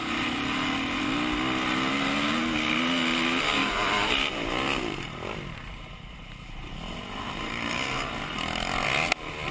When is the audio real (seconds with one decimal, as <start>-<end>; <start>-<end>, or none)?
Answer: 0.0-3.6; 8.1-9.5